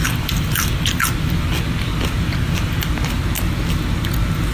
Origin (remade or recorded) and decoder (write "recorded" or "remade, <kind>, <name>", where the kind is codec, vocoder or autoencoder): recorded